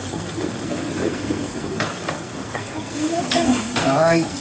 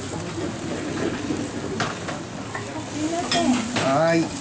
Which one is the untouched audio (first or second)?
second